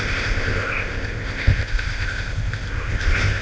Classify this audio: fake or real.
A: fake